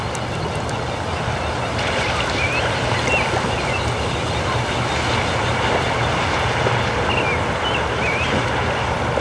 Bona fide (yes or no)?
yes